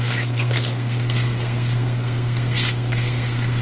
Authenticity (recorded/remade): remade